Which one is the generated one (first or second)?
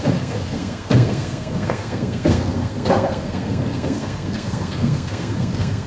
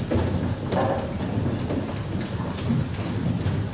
first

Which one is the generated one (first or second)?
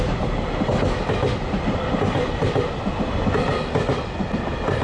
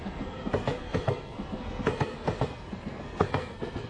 second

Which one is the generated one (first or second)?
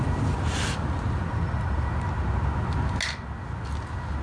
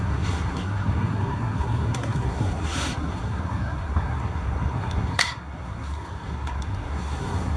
second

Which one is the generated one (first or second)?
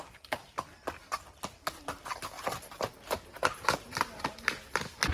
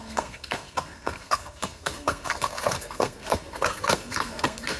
second